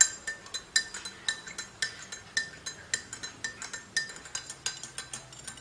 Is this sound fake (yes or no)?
no